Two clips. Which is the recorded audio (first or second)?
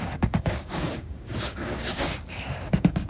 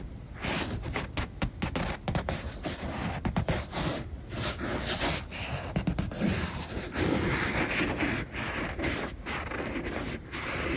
second